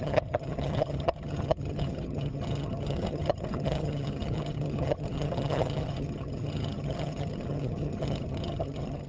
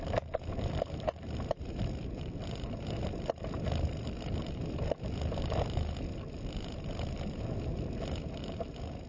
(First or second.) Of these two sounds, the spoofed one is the first